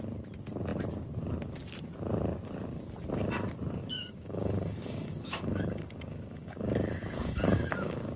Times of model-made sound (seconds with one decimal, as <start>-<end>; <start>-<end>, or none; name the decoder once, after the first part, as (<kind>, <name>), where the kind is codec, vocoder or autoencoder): 3.8-8.2 (codec, DAC)